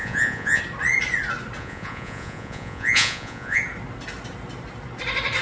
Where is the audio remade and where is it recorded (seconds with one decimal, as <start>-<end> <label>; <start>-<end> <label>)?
0.0-0.6 remade; 0.6-1.6 recorded; 1.6-3.6 remade; 3.6-5.4 recorded